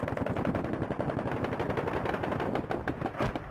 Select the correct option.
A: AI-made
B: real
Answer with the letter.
B